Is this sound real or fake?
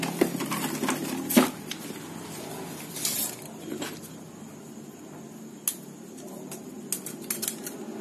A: real